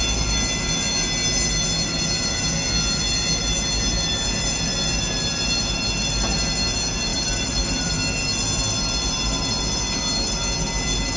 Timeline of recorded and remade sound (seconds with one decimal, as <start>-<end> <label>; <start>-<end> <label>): 0.0-7.1 recorded; 7.1-7.9 remade; 7.9-11.2 recorded